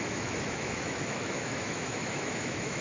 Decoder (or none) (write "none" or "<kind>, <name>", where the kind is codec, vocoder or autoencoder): autoencoder, DAC-VAE